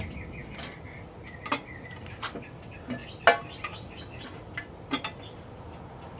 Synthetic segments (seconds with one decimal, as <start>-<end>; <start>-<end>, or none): none